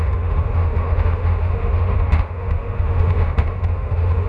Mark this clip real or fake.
fake